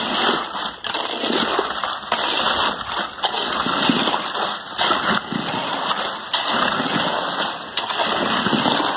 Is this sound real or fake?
real